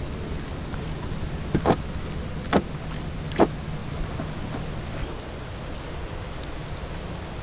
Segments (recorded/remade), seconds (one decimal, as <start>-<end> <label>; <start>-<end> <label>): 0.0-7.4 recorded